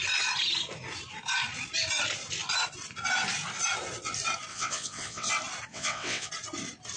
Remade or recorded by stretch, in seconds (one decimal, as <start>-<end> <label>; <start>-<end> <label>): 0.0-4.5 recorded; 4.5-5.3 remade; 5.3-5.7 recorded; 5.7-6.3 remade; 6.3-7.0 recorded